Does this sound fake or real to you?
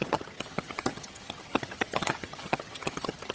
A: fake